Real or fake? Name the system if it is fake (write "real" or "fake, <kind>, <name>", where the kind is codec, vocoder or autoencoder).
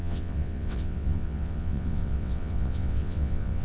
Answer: fake, vocoder, WaveNeXt